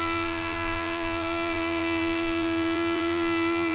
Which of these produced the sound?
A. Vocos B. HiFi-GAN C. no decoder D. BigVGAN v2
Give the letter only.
D